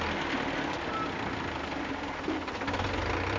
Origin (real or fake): real